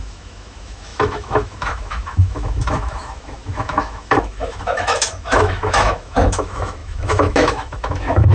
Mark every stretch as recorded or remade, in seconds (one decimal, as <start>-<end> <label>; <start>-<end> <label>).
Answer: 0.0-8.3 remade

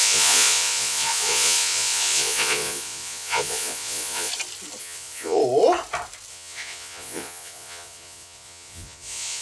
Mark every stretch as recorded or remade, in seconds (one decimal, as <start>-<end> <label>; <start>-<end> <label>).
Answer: 0.0-4.3 remade; 4.3-4.8 recorded; 4.8-5.4 remade; 5.4-6.3 recorded; 6.3-9.4 remade

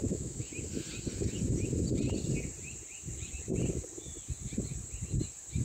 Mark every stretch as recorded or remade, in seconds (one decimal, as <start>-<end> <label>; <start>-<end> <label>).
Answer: 0.0-0.5 remade; 0.5-5.6 recorded

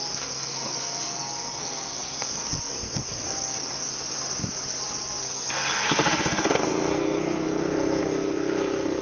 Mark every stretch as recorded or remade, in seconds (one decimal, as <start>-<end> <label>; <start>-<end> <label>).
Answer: 0.0-3.9 remade; 3.9-5.1 recorded; 5.1-9.0 remade

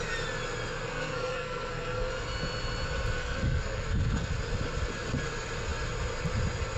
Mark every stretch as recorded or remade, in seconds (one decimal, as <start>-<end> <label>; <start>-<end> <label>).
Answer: 0.0-0.8 recorded; 0.8-2.1 remade; 2.1-3.2 recorded; 3.2-4.3 remade; 4.3-6.8 recorded

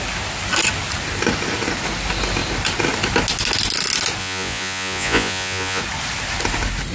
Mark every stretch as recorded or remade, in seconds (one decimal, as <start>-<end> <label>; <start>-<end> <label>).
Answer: 0.0-4.2 recorded; 4.2-5.8 remade; 5.8-6.9 recorded

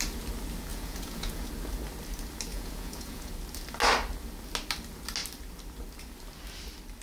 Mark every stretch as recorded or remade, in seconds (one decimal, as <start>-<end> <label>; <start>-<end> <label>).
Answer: 0.0-0.7 recorded; 0.7-1.5 remade; 1.5-2.5 recorded; 2.5-3.3 remade; 3.3-7.0 recorded

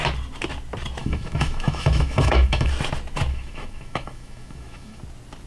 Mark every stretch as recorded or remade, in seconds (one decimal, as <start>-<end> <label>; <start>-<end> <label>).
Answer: 0.0-1.0 recorded; 1.0-2.7 remade; 2.7-3.3 recorded; 3.3-5.0 remade; 5.0-5.5 recorded